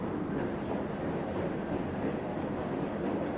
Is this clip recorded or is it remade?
recorded